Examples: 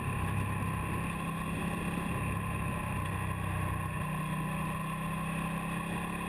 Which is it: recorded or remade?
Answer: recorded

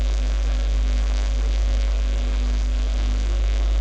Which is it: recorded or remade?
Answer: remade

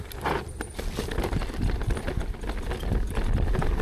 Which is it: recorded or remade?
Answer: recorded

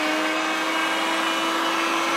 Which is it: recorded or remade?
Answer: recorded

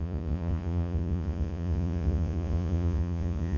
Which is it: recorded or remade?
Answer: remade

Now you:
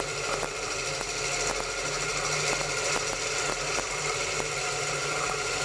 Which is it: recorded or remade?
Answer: recorded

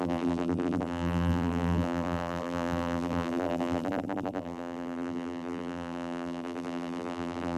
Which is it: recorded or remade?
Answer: remade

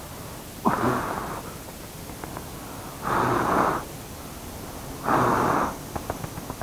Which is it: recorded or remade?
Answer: recorded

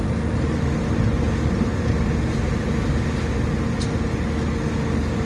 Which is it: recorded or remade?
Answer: recorded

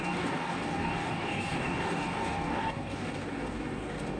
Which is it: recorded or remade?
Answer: remade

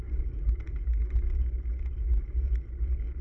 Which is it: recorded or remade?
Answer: recorded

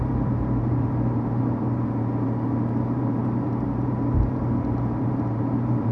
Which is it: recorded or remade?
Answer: remade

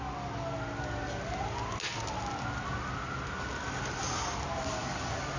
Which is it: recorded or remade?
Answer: recorded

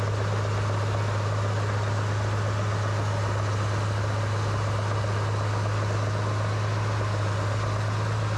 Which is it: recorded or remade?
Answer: recorded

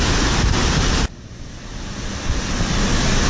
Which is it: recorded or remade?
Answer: recorded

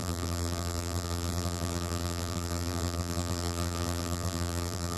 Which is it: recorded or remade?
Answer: remade